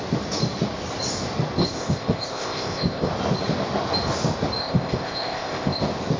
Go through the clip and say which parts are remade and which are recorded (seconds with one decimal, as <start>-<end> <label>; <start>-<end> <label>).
0.0-1.6 recorded; 1.6-3.1 remade; 3.1-4.6 recorded; 4.6-5.8 remade; 5.8-6.2 recorded